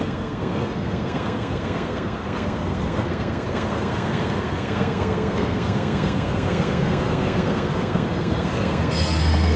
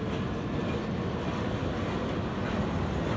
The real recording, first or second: second